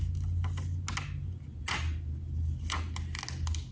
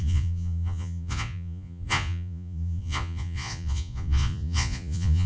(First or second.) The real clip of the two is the first